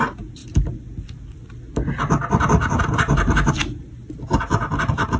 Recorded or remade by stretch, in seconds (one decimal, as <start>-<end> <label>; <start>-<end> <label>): 0.0-5.2 recorded